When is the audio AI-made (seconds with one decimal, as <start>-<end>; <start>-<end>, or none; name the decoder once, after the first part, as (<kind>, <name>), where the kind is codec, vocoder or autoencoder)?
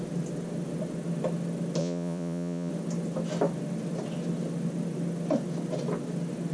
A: 1.8-2.7 (vocoder, Vocos)